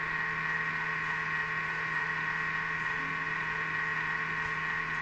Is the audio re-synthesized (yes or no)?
no